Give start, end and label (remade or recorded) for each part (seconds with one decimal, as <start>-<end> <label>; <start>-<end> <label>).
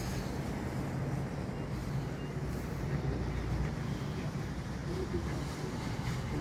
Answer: 0.0-6.4 recorded